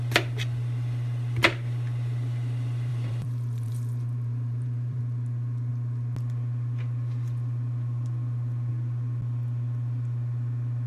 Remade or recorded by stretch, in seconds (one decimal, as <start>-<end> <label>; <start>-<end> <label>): 0.0-2.9 recorded; 2.9-5.0 remade; 5.0-10.9 recorded